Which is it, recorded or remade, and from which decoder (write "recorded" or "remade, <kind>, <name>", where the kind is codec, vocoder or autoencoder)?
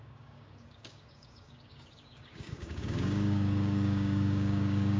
remade, codec, DAC